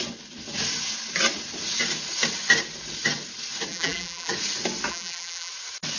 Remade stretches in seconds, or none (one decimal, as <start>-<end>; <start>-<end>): 3.7-4.3; 4.9-5.5